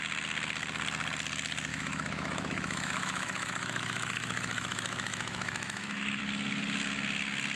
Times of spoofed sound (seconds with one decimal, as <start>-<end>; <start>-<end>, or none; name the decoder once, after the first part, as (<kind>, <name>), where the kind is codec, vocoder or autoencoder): 1.7-6.2 (autoencoder, DAC-VAE)